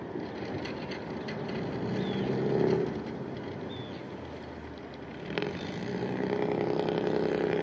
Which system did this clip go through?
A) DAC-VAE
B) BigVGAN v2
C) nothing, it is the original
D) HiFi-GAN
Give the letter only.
C